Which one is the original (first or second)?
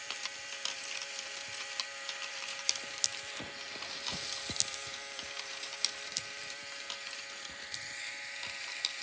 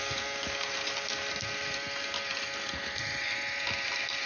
second